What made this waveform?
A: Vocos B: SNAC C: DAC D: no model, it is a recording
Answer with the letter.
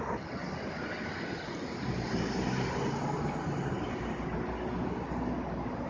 D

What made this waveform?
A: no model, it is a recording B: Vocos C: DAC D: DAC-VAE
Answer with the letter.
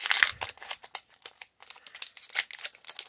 A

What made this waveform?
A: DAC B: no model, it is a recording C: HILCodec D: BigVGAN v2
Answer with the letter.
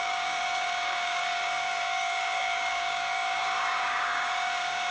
A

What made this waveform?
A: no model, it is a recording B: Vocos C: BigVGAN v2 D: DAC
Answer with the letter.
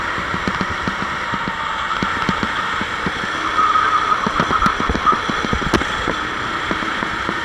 A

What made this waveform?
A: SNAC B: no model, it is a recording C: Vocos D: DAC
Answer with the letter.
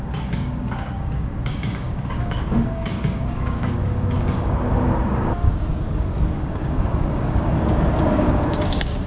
D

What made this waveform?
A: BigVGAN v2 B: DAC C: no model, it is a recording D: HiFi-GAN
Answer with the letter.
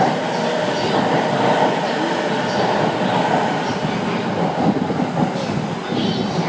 C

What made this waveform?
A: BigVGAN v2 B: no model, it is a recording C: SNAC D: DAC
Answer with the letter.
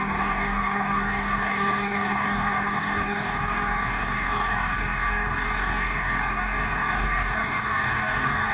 D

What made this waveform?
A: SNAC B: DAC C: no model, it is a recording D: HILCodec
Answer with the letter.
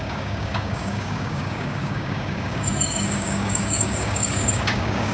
B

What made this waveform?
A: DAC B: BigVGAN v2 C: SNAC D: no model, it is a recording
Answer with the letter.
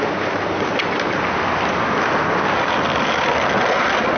D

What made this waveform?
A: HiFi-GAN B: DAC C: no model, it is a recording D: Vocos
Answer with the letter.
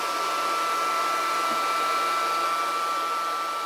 C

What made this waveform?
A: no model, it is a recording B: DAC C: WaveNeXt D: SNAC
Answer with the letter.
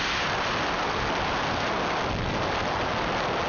A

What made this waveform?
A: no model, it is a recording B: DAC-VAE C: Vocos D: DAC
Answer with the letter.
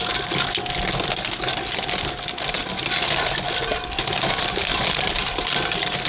A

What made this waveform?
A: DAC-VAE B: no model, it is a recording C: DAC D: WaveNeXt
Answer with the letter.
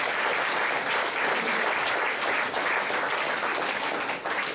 B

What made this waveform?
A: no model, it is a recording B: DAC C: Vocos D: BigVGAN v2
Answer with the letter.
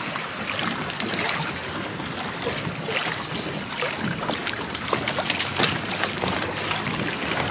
A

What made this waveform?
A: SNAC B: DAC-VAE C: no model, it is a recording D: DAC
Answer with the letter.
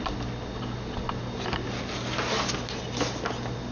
C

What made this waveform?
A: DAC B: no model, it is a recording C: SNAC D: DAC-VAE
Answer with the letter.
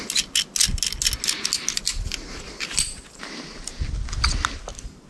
B